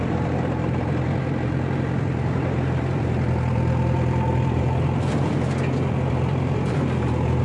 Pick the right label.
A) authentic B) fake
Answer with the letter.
B